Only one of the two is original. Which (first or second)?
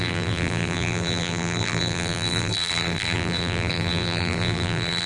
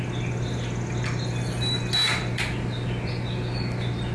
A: second